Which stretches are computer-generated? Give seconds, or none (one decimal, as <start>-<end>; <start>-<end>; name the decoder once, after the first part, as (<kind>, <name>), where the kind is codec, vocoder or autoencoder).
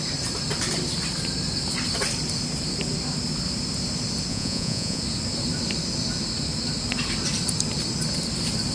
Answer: 4.3-5.0 (vocoder, Vocos)